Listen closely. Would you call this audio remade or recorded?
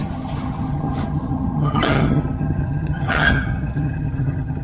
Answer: remade